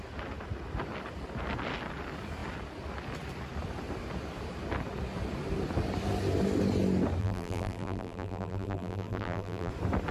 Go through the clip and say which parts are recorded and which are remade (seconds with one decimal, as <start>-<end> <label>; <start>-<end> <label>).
0.0-7.2 recorded; 7.2-9.7 remade; 9.7-10.1 recorded